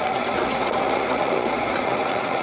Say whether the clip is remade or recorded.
remade